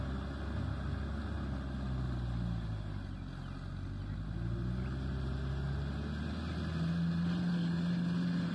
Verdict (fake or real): real